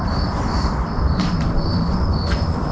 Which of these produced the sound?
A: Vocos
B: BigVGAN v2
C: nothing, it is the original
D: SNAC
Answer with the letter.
B